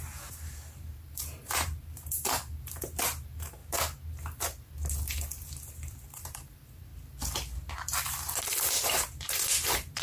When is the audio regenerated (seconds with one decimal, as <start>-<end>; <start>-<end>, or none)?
0.0-3.6; 5.6-6.9; 8.4-10.0